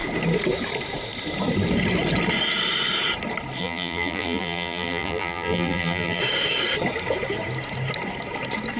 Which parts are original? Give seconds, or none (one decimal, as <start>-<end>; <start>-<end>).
0.0-3.6; 6.2-8.8